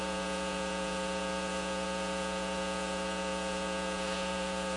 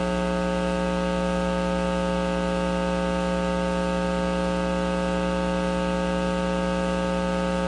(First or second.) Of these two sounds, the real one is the second